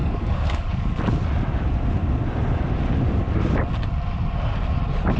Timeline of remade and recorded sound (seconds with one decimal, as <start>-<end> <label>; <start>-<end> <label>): 0.0-1.0 remade; 1.0-5.2 recorded